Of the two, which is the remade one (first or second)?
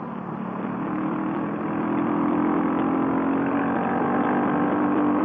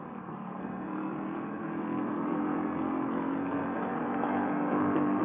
second